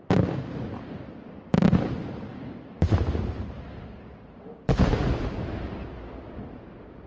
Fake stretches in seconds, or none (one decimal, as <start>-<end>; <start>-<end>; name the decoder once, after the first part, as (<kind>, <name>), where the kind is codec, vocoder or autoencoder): 1.5-4.9 (vocoder, BigVGAN v2)